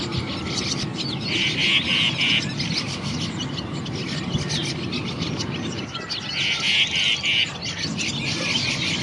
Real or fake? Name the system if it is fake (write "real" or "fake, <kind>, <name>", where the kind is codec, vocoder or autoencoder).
real